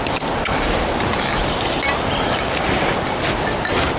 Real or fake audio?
real